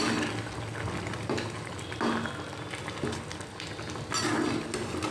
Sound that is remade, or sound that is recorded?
recorded